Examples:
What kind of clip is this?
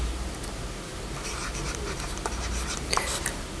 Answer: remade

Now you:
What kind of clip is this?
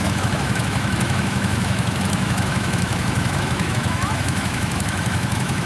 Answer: remade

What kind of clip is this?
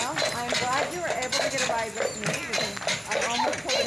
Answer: recorded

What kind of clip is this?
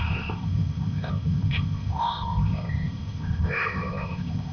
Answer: remade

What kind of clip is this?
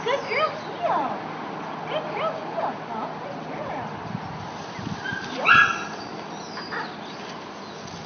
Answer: recorded